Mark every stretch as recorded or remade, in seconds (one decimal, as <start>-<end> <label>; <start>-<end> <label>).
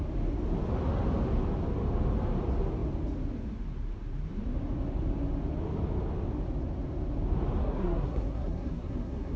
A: 0.0-7.6 recorded; 7.6-9.4 remade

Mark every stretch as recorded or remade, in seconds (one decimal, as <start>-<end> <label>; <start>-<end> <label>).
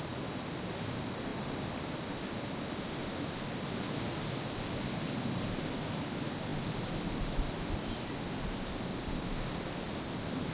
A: 0.0-10.5 recorded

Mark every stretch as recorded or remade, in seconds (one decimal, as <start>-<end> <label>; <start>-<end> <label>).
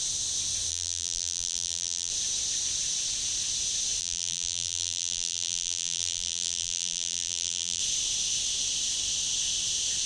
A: 0.0-0.7 recorded; 0.7-2.1 remade; 2.1-4.0 recorded; 4.0-7.8 remade; 7.8-10.1 recorded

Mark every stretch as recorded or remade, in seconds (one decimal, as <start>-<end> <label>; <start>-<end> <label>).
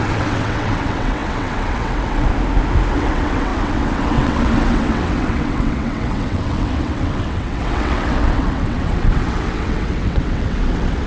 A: 0.0-2.3 remade; 2.3-2.9 recorded; 2.9-11.1 remade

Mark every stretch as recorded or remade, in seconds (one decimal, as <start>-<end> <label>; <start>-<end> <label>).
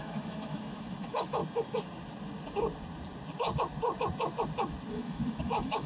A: 0.0-1.4 remade; 1.4-4.9 recorded; 4.9-5.9 remade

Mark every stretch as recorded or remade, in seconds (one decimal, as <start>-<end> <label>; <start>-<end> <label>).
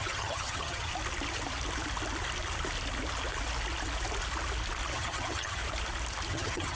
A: 0.0-0.9 remade; 0.9-4.9 recorded; 4.9-5.6 remade; 5.6-6.3 recorded; 6.3-6.7 remade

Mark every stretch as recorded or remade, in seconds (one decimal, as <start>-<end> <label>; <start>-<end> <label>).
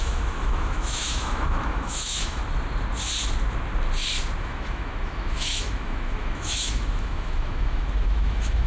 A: 0.0-2.4 remade; 2.4-4.4 recorded; 4.4-8.7 remade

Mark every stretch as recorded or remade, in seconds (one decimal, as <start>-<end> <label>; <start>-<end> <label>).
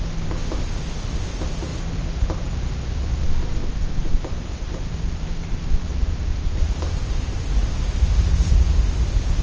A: 0.0-3.6 recorded; 3.6-7.5 remade; 7.5-9.4 recorded